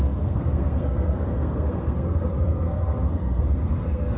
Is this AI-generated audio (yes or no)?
yes